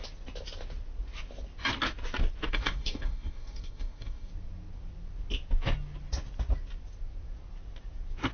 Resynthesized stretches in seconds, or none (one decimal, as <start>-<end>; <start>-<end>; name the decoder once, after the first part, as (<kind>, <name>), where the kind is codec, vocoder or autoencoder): 2.5-4.3 (codec, DAC)